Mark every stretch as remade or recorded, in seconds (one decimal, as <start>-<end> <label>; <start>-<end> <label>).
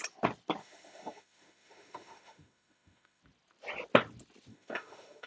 0.0-0.6 recorded; 0.6-3.2 remade; 3.2-4.5 recorded; 4.5-5.3 remade